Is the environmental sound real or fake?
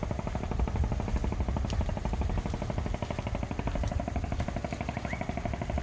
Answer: real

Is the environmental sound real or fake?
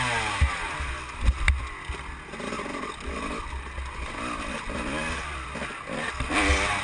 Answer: real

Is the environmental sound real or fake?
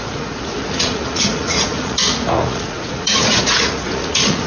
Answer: fake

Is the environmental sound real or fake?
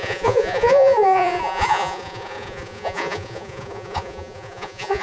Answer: fake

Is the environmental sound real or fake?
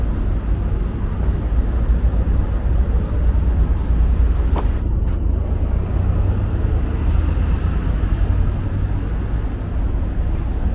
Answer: real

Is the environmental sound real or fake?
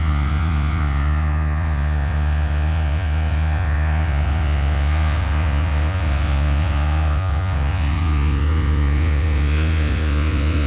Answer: fake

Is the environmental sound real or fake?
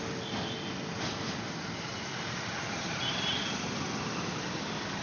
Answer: real